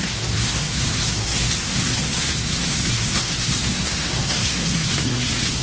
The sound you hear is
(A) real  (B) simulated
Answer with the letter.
B